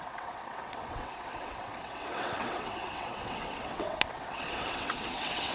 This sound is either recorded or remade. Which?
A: remade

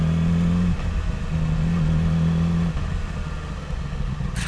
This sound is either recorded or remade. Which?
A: recorded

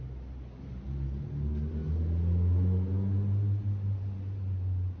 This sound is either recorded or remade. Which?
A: recorded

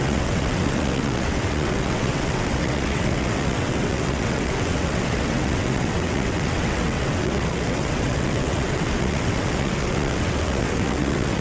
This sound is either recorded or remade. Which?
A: remade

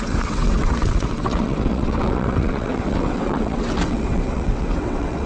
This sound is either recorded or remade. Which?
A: remade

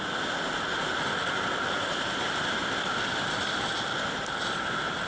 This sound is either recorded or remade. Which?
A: recorded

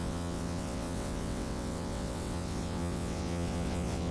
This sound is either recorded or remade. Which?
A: remade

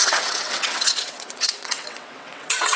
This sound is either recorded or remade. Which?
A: remade